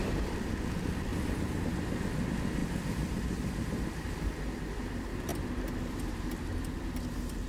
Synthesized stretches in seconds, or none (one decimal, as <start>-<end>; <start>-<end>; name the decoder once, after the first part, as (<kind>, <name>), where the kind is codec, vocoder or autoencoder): 0.0-0.5 (vocoder, BigVGAN v2); 2.6-4.4